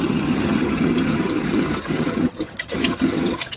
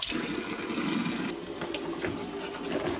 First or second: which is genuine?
second